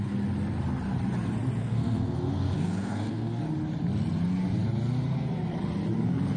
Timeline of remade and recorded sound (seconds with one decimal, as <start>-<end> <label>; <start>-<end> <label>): 0.0-1.6 recorded; 1.6-3.4 remade; 3.4-6.4 recorded